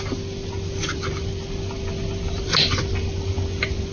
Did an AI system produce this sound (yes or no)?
no